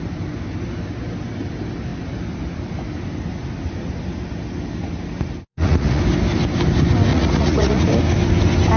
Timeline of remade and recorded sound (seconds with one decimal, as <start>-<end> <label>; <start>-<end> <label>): 0.0-5.5 recorded; 5.5-6.0 remade; 6.0-7.1 recorded; 7.1-7.8 remade; 7.8-8.8 recorded